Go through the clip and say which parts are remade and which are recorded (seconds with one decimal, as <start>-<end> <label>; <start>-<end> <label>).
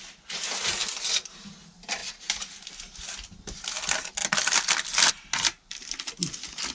0.0-6.7 recorded